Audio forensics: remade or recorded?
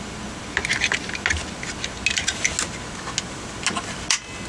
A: recorded